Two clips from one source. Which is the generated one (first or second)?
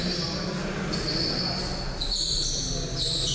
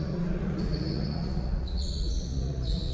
second